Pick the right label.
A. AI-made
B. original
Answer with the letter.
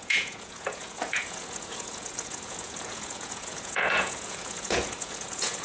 A